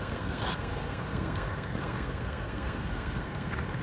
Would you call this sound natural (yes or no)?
no